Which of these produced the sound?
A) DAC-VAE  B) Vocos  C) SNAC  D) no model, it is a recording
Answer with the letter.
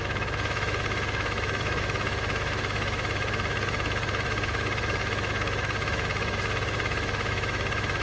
A